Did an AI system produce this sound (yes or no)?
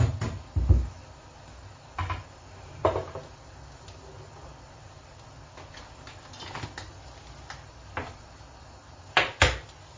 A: no